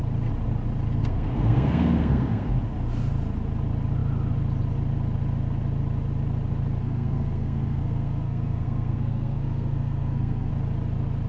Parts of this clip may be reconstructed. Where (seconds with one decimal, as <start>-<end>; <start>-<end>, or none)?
1.0-2.5; 6.8-10.5